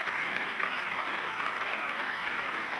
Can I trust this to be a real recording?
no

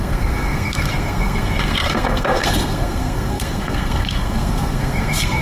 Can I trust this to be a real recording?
no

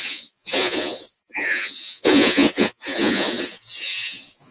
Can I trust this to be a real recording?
no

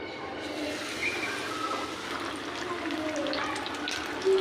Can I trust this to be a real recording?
yes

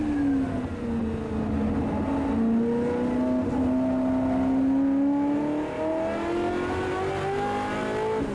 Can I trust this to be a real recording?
yes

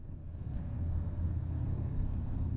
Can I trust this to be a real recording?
no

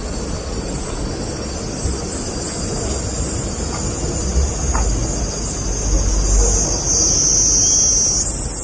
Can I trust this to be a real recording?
yes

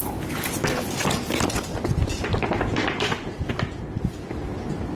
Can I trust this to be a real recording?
yes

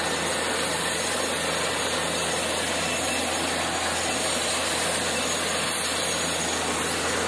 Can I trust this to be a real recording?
yes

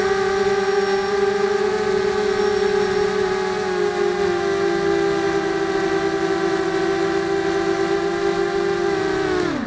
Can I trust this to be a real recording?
yes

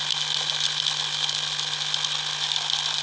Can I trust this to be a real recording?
yes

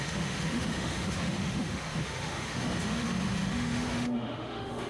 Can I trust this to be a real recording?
no